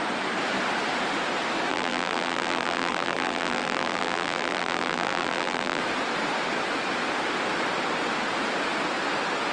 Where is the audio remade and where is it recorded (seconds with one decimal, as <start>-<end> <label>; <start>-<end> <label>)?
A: 0.0-1.7 recorded; 1.7-5.8 remade; 5.8-9.5 recorded